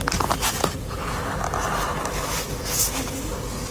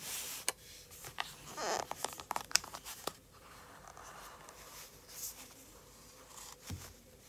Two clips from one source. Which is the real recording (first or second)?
first